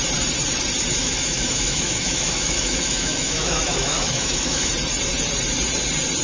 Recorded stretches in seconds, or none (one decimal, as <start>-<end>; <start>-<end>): 0.0-1.0; 4.7-6.2